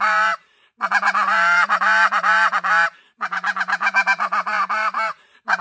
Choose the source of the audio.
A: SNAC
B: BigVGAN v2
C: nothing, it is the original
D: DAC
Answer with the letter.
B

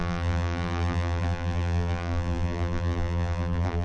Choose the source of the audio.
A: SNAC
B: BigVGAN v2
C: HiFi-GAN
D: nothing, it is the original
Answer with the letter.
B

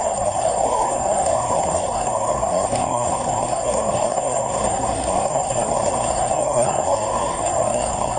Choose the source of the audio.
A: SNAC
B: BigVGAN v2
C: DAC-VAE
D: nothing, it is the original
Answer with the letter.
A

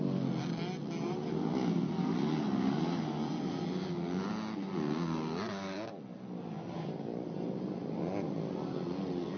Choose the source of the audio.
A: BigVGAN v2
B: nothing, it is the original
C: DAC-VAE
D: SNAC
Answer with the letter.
B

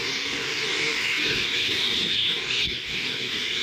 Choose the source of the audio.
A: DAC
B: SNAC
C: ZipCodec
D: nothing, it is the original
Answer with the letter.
A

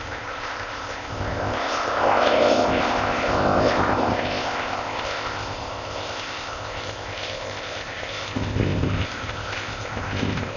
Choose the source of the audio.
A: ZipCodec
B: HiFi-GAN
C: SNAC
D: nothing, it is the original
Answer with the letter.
A